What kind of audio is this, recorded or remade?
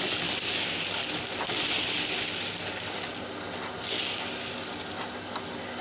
recorded